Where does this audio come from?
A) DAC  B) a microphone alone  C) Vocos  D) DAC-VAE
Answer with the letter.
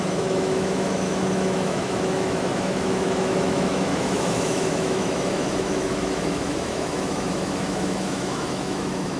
D